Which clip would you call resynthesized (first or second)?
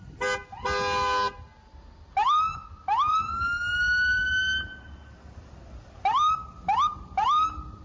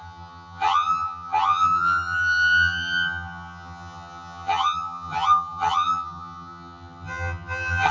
second